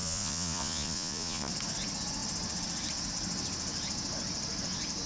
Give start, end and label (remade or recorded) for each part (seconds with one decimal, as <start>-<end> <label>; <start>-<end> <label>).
0.0-1.5 remade; 1.5-5.1 recorded